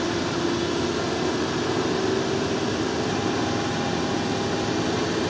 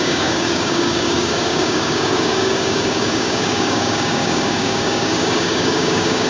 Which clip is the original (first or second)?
first